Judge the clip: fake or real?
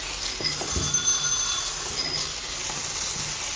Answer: real